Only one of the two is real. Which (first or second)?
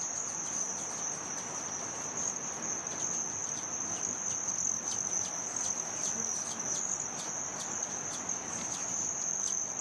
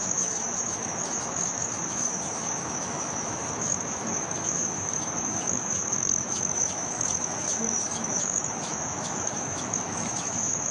first